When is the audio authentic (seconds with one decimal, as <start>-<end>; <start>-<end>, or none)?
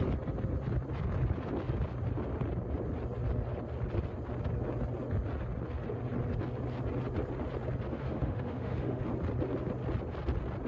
0.0-7.9; 9.0-10.7